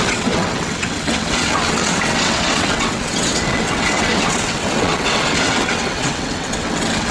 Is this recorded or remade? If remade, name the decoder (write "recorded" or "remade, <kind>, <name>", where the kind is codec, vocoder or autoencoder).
remade, vocoder, WaveNeXt